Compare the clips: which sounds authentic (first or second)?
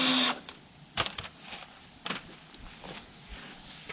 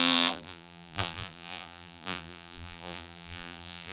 first